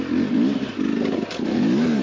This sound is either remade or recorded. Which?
recorded